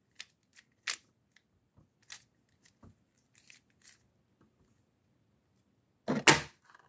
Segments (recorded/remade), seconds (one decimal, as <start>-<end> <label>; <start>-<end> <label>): 0.0-6.9 recorded